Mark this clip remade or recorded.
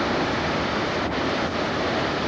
recorded